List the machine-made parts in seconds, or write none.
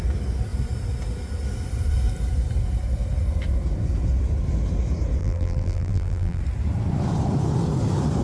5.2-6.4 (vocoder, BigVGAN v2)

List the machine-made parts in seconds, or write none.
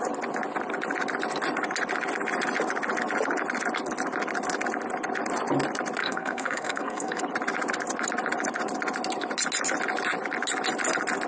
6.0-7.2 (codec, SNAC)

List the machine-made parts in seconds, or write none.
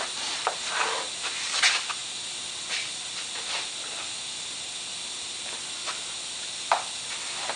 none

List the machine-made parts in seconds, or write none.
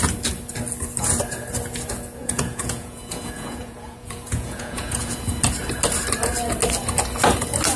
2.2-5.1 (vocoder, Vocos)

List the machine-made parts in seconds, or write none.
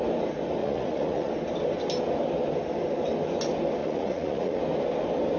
0.6-1.3 (vocoder, Vocos); 3.8-4.6